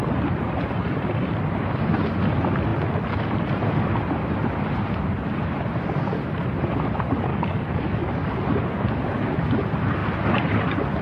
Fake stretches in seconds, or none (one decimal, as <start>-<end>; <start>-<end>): 7.3-8.3